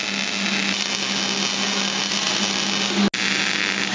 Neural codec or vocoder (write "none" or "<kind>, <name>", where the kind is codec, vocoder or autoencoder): none